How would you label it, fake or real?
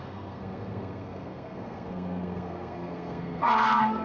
fake